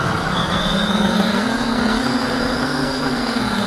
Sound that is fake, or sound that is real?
fake